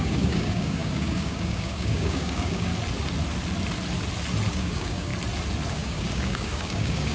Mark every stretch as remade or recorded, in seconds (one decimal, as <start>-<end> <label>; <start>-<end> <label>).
0.0-2.7 remade; 2.7-4.5 recorded; 4.5-5.1 remade; 5.1-5.7 recorded; 5.7-7.1 remade